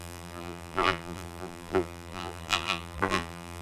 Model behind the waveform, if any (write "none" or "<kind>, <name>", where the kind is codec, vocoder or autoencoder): vocoder, BigVGAN v2